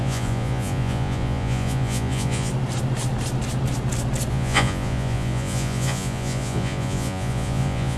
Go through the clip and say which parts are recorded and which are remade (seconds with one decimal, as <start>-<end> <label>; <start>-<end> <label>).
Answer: 0.0-2.5 remade; 2.5-4.3 recorded; 4.3-8.0 remade